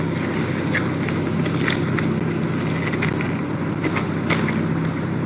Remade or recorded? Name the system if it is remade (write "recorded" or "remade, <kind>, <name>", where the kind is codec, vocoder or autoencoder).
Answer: recorded